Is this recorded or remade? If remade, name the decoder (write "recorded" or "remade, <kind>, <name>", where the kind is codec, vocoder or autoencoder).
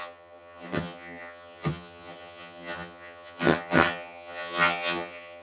remade, vocoder, HiFi-GAN